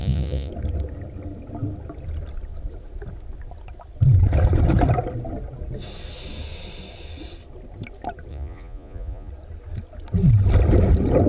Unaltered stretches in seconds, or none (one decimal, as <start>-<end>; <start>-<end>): 0.5-8.3; 9.3-11.3

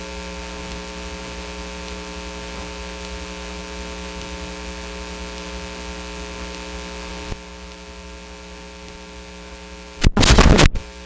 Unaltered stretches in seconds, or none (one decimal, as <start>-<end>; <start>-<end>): 0.0-11.1